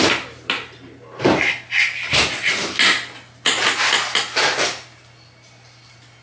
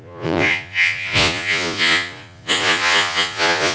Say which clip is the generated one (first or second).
second